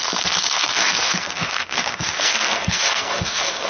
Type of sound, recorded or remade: remade